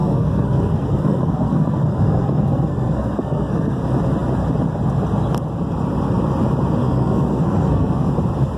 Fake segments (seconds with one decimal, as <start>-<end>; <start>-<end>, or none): 0.0-3.8; 6.8-8.1